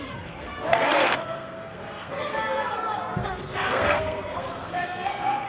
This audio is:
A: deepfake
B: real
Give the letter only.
A